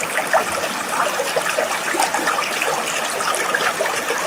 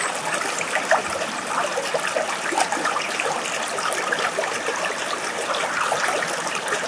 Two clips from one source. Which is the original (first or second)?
first